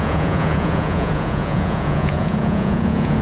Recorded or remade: remade